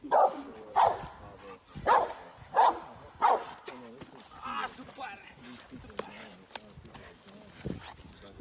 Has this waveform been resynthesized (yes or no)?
no